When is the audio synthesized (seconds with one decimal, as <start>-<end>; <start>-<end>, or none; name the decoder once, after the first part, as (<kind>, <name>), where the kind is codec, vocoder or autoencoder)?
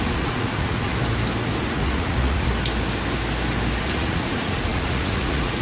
0.0-0.9 (vocoder, Vocos); 1.6-2.5; 3.8-5.6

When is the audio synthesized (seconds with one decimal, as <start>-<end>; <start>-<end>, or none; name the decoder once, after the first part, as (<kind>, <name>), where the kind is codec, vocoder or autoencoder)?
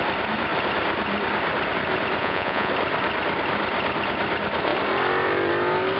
2.2-2.7 (vocoder, Vocos)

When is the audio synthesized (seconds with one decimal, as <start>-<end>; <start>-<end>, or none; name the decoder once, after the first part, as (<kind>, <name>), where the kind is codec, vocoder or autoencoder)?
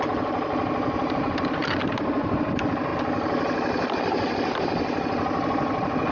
none